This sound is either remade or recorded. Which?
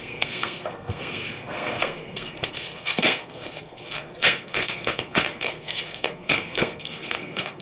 remade